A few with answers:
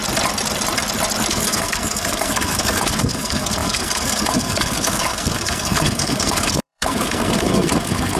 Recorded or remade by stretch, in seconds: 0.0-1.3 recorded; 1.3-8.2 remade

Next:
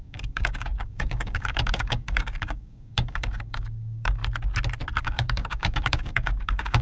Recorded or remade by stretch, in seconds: 0.0-4.2 remade; 4.2-5.0 recorded; 5.0-6.8 remade